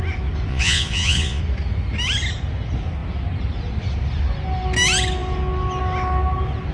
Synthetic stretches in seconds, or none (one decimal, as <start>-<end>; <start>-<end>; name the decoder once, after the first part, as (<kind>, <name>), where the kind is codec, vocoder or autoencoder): 0.5-1.4 (vocoder, Vocos)